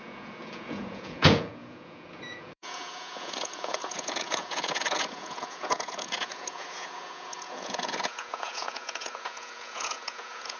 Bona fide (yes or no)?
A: no